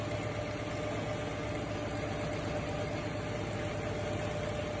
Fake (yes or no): no